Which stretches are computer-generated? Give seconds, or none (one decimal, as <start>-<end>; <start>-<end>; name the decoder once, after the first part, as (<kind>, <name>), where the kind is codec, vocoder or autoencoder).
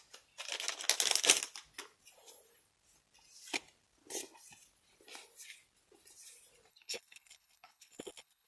6.7-8.5 (codec, HILCodec)